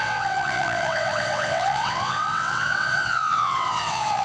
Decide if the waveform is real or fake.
fake